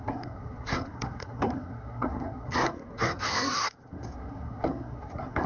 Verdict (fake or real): fake